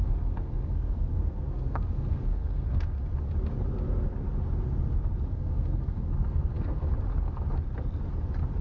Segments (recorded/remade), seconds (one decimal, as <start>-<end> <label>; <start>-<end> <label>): 0.0-3.0 remade; 3.0-5.3 recorded; 5.3-6.9 remade; 6.9-8.6 recorded